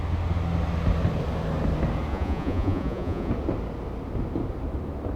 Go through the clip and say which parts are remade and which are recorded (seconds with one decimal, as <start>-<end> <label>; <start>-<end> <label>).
0.0-2.1 recorded; 2.1-3.3 remade; 3.3-5.2 recorded